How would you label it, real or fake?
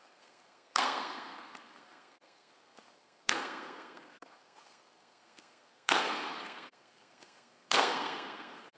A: fake